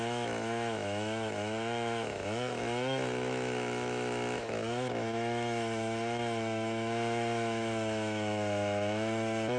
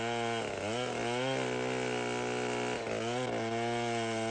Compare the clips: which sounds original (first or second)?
second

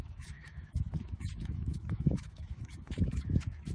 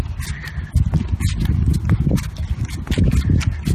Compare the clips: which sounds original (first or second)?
second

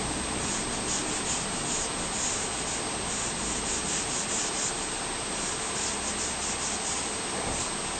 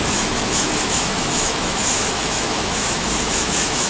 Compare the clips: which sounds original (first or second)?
first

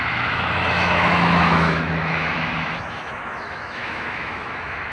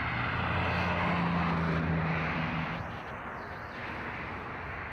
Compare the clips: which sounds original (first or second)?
second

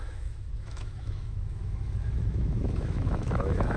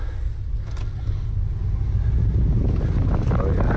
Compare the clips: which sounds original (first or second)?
second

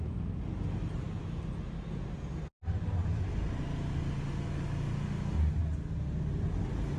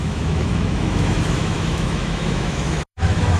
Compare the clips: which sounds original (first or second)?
first